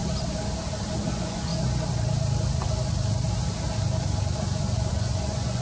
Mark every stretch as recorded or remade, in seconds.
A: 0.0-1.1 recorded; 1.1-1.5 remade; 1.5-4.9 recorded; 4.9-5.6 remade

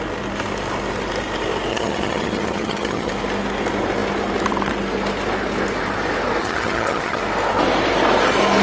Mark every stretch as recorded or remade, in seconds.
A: 0.0-1.7 recorded; 1.7-3.1 remade; 3.1-6.4 recorded; 6.4-7.2 remade; 7.2-8.6 recorded

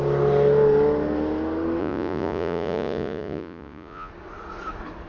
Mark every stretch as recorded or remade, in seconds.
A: 0.0-1.8 recorded; 1.8-4.1 remade; 4.1-5.1 recorded